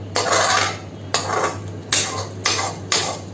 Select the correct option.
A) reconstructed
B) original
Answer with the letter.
B